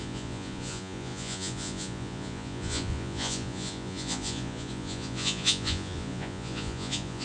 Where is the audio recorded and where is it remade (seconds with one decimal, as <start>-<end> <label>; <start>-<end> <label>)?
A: 0.0-7.2 remade